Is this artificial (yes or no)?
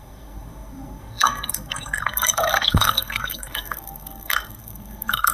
yes